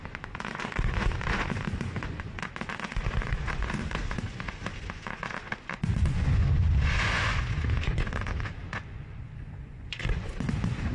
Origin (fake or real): fake